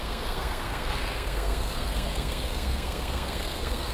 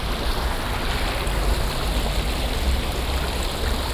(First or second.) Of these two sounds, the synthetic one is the first